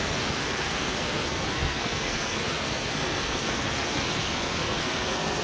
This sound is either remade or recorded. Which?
remade